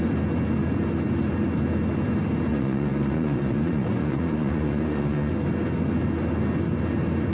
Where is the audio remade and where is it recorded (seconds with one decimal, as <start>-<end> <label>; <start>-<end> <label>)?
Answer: 0.0-2.5 recorded; 2.5-5.3 remade; 5.3-7.3 recorded